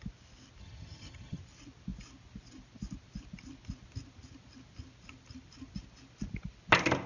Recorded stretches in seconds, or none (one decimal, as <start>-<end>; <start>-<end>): 0.0-0.6; 1.4-7.1